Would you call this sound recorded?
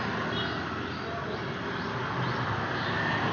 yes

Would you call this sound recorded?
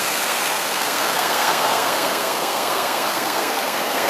no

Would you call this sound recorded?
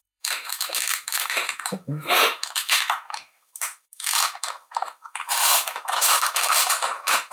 no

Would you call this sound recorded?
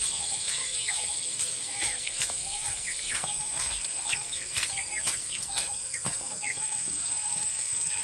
no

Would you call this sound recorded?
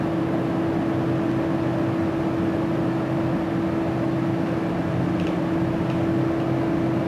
yes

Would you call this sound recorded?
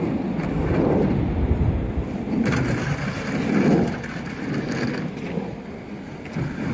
yes